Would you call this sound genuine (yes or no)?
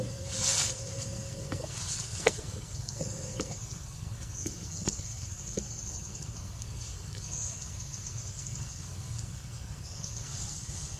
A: no